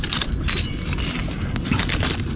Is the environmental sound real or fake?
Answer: real